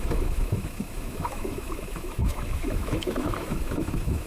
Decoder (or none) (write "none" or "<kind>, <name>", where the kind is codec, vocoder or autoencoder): autoencoder, DAC-VAE